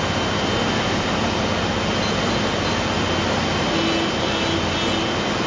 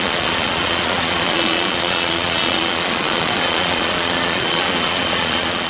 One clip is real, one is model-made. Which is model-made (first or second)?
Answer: second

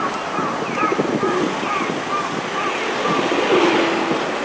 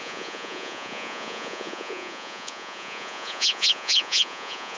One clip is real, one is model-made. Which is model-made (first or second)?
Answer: second